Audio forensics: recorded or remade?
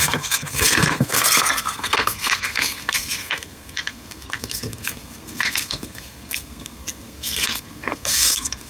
remade